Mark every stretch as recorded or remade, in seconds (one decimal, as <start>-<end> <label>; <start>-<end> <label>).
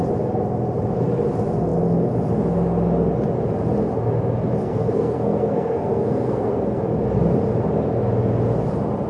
0.0-4.6 recorded; 4.6-6.8 remade; 6.8-9.1 recorded